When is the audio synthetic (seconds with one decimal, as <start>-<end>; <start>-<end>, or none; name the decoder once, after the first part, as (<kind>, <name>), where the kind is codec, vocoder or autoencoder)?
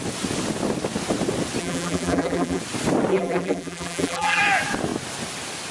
1.6-2.6 (vocoder, BigVGAN v2); 3.1-4.4